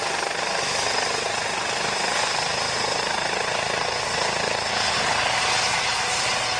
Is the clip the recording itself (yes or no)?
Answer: yes